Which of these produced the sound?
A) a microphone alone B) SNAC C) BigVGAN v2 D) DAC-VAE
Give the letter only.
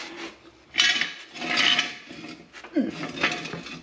A